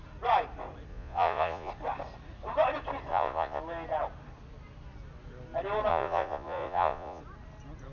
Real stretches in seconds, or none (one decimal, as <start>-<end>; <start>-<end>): 0.0-0.9; 1.7-3.1; 3.6-5.9; 7.2-7.9

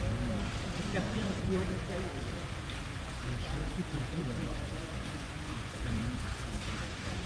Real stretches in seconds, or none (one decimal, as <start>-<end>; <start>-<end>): 0.0-0.9; 1.9-2.9

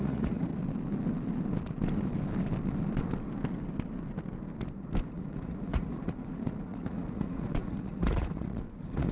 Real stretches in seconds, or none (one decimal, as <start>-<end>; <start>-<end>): 0.5-5.1

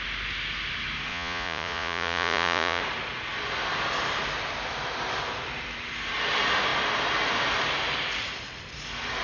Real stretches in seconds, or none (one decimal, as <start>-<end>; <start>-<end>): 0.0-1.1; 2.8-9.2

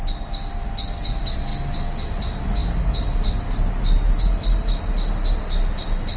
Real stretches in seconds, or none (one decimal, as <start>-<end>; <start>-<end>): 0.0-6.2